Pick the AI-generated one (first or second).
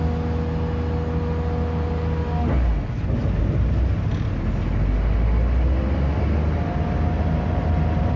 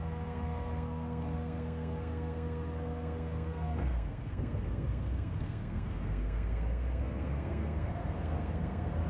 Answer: second